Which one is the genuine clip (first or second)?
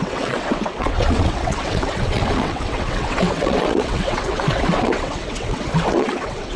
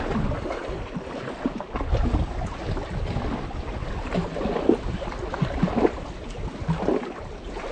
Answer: second